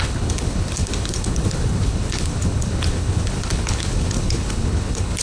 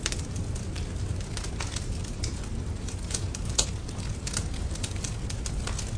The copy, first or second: first